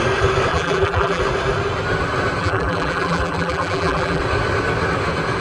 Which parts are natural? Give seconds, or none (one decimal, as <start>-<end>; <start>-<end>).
0.0-0.5; 1.2-2.4; 4.2-5.4